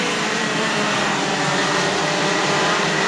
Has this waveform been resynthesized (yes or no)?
yes